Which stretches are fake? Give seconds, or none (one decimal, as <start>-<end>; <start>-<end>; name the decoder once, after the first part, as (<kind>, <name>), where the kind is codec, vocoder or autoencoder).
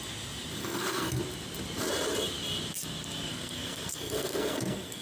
0.6-1.2 (codec, SNAC); 3.3-5.0